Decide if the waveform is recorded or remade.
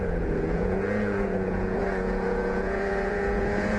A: remade